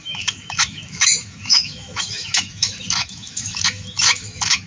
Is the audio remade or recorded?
remade